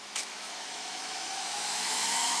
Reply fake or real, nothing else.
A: fake